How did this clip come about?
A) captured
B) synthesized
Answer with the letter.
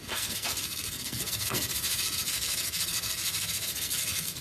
B